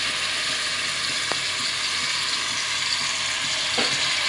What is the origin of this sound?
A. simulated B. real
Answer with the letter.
B